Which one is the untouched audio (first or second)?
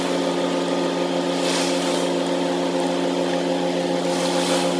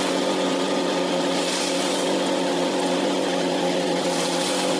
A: first